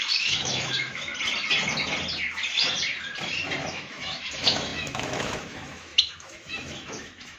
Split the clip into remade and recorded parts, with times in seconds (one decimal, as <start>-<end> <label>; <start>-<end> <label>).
0.0-1.1 remade; 1.1-3.7 recorded; 3.7-7.4 remade